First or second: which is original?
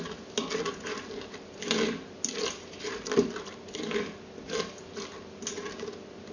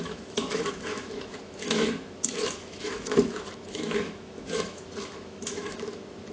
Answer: first